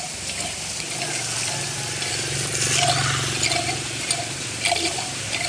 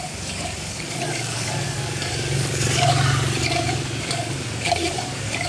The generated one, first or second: second